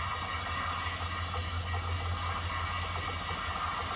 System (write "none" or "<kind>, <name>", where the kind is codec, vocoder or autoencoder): none